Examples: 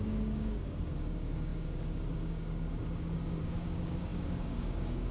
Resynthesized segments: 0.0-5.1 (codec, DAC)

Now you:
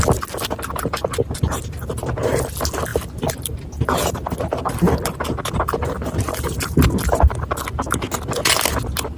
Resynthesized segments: none

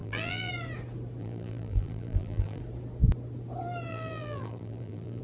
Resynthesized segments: 0.0-0.5 (vocoder, BigVGAN v2); 1.2-2.6; 3.9-5.2